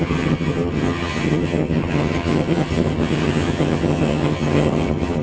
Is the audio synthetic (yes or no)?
yes